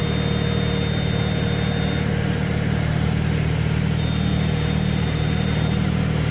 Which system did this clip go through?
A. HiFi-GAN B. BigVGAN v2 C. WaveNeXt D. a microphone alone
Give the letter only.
D